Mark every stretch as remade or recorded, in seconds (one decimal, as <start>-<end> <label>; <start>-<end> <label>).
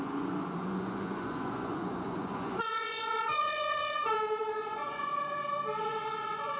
0.0-5.1 remade; 5.1-5.8 recorded; 5.8-6.6 remade